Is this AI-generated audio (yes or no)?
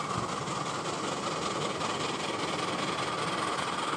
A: no